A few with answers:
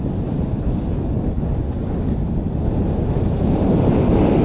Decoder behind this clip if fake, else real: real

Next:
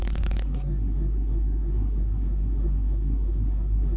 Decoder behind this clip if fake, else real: fake, codec, SNAC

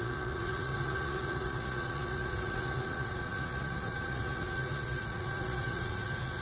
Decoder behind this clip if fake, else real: fake, vocoder, Vocos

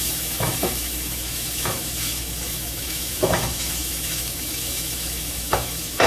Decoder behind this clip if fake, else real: fake, autoencoder, DAC-VAE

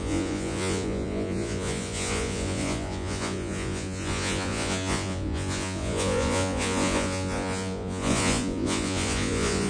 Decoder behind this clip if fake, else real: fake, vocoder, Vocos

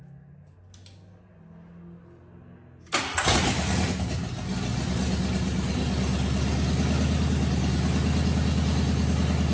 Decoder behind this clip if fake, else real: real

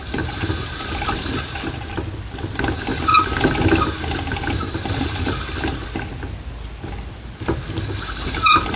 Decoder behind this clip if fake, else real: real